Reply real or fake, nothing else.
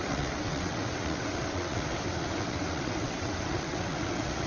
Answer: fake